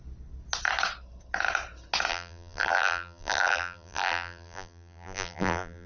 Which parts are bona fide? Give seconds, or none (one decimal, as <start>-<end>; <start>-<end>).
0.0-2.1